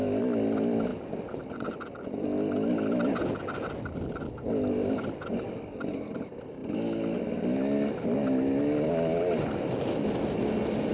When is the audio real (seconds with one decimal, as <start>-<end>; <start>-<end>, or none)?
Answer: 0.0-10.9